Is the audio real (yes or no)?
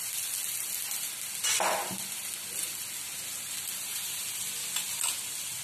yes